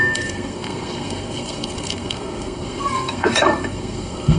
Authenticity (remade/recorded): remade